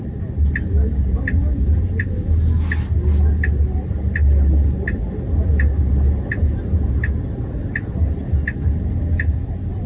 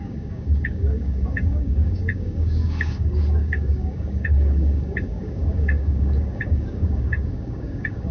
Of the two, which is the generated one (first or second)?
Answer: second